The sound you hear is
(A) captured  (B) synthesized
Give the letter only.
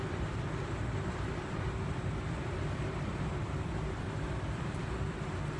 B